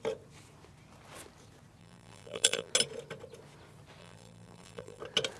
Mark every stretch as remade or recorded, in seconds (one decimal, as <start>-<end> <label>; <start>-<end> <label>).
0.0-1.8 recorded; 1.8-2.7 remade; 2.7-4.0 recorded; 4.0-5.0 remade; 5.0-5.4 recorded